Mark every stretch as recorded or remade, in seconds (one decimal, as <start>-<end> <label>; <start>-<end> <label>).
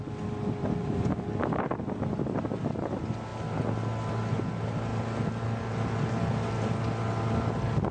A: 0.0-0.6 recorded; 0.6-1.8 remade; 1.8-7.9 recorded